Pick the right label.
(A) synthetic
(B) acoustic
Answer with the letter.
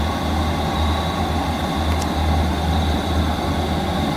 B